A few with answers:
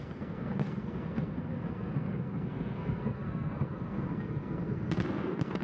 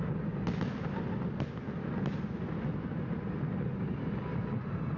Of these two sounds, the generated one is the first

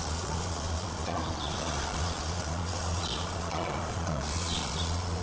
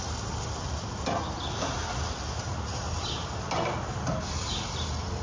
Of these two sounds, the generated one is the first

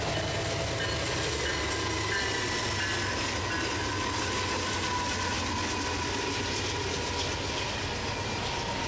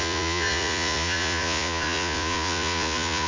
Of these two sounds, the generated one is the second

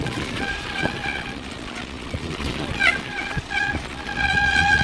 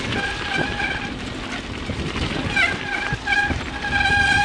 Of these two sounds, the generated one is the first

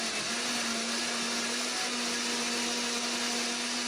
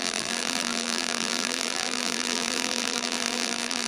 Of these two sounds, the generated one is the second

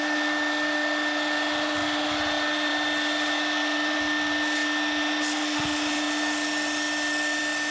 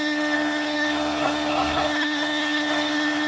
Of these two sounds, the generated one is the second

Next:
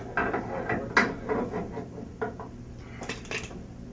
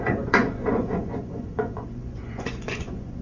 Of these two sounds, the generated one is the second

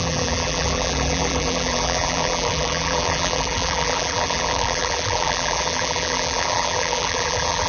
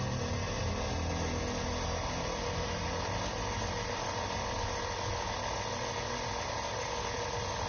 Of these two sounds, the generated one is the first